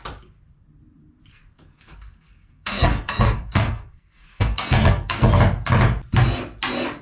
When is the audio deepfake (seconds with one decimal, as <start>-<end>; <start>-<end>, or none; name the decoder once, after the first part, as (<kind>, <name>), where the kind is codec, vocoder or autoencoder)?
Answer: 1.3-5.4 (codec, SNAC)